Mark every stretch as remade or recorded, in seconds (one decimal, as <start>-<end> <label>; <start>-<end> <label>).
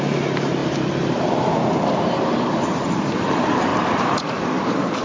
0.0-3.7 remade; 3.7-4.2 recorded; 4.2-5.0 remade